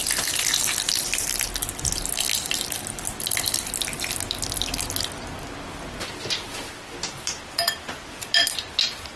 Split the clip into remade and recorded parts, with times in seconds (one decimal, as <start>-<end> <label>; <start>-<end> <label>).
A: 0.0-9.2 recorded